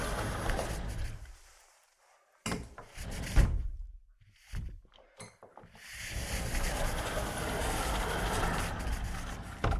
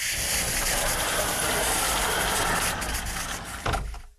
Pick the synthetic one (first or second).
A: first